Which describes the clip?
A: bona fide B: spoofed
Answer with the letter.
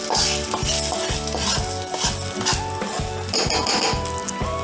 A